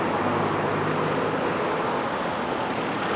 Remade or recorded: recorded